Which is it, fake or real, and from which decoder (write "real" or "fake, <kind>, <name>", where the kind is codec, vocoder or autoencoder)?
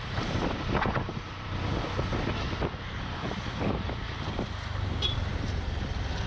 fake, vocoder, BigVGAN v2